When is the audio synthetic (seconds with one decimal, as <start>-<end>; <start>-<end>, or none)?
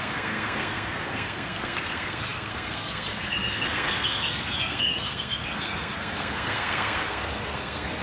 0.0-8.0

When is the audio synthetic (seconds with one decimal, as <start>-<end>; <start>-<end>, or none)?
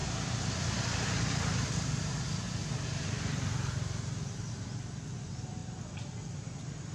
none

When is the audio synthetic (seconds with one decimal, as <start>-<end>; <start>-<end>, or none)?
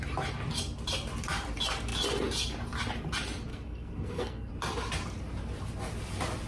3.5-4.5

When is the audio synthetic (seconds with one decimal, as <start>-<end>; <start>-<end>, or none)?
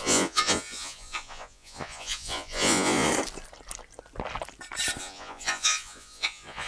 0.0-3.1; 5.0-6.7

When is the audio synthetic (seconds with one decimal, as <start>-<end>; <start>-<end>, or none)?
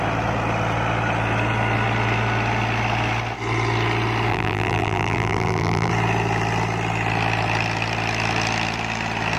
4.3-5.9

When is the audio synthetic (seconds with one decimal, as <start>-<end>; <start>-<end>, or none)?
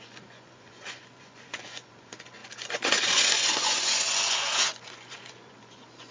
0.0-6.1